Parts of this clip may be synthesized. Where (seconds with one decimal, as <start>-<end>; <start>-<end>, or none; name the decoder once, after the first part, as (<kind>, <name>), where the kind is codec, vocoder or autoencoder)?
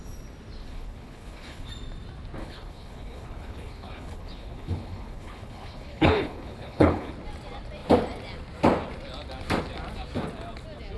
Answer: 0.6-1.7 (codec, HILCodec); 2.4-7.1